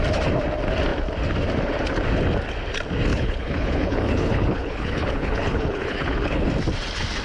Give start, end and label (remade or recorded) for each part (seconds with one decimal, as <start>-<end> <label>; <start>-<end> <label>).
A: 0.0-3.1 recorded; 3.1-6.5 remade; 6.5-7.2 recorded

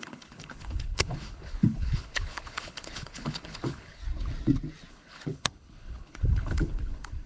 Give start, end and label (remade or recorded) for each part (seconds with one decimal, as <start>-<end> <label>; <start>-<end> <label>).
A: 0.0-4.0 remade; 4.0-4.9 recorded; 4.9-7.3 remade